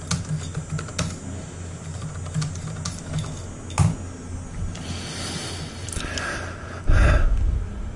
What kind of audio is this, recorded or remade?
recorded